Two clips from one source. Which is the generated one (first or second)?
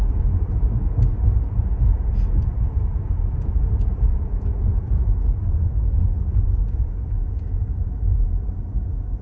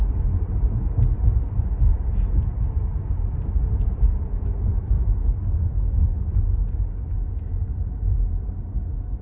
first